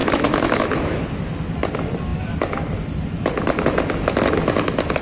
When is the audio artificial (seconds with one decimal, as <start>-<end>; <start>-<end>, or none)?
0.0-1.0